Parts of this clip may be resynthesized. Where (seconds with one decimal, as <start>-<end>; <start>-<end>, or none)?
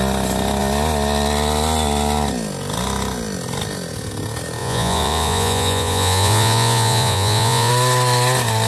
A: 4.6-7.7